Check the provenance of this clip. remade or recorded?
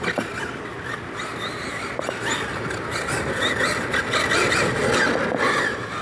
recorded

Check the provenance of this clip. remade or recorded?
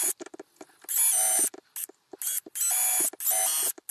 recorded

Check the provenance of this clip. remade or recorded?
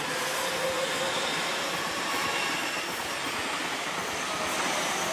recorded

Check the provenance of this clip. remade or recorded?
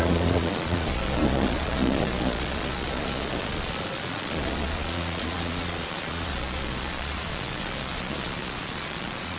remade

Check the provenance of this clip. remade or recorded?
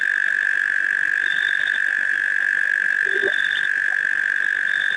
recorded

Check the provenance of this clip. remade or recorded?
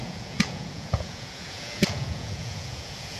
remade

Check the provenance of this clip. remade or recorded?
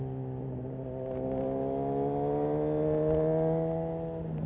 recorded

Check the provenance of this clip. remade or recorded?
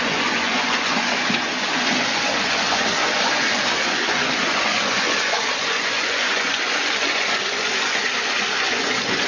remade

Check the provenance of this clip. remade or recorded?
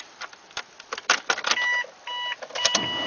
recorded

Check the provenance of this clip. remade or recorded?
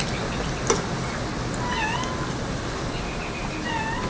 recorded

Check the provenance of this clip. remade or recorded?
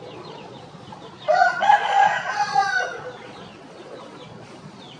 remade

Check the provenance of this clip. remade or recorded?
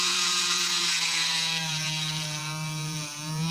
remade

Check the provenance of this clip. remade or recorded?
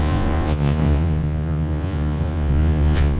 remade